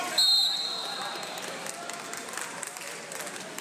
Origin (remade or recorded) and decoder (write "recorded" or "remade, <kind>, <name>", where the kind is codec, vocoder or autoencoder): recorded